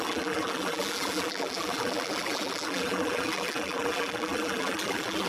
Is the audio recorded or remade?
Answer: remade